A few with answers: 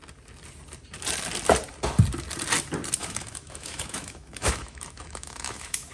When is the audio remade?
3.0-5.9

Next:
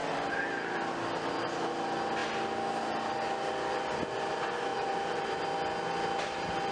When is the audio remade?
0.0-0.9; 4.7-5.4

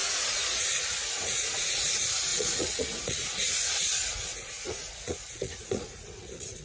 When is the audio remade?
0.0-6.6